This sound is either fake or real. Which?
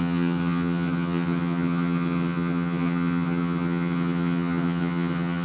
fake